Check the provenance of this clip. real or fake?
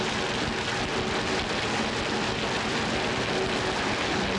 real